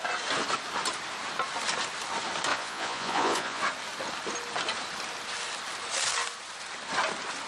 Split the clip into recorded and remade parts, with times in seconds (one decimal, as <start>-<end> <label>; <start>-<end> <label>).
0.0-2.5 recorded; 2.5-3.6 remade; 3.6-7.5 recorded